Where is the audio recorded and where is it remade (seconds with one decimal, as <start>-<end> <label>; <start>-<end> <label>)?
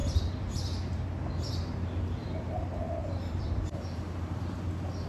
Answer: 0.0-3.0 recorded; 3.0-4.6 remade; 4.6-5.1 recorded